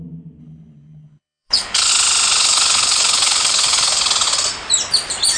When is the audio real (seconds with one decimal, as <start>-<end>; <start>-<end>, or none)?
0.0-0.4; 1.9-2.4; 4.0-5.4